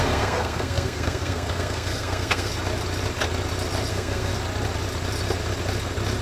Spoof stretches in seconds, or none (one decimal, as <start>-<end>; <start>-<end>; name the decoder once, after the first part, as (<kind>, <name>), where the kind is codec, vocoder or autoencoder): 0.0-2.5 (codec, SNAC); 3.9-4.3